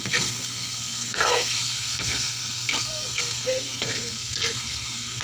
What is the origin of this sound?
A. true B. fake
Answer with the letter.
B